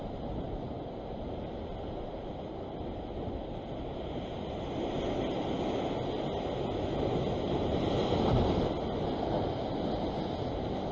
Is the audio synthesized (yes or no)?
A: no